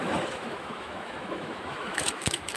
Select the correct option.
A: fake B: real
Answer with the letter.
A